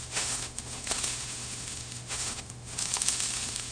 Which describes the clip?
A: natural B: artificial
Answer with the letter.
B